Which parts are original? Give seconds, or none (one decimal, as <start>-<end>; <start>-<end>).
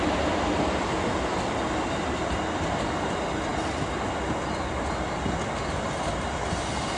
0.0-0.9; 2.2-7.0